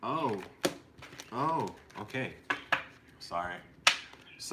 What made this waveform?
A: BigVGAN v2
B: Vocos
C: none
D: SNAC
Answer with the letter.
C